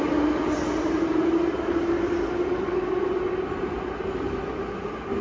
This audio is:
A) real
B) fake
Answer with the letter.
A